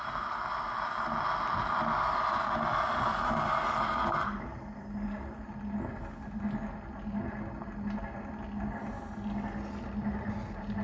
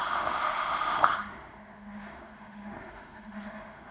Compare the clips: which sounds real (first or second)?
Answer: first